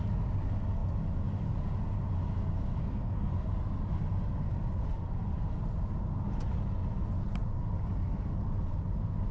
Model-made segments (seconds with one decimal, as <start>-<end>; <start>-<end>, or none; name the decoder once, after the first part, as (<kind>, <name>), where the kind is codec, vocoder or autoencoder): 2.8-3.3 (codec, SNAC)